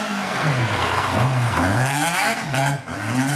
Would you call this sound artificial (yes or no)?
yes